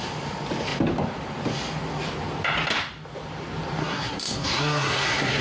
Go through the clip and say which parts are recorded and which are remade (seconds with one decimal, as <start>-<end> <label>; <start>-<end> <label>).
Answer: 0.0-3.8 recorded; 3.8-5.4 remade